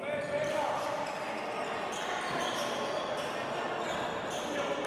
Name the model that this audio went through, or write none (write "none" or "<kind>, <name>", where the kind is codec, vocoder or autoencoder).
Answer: none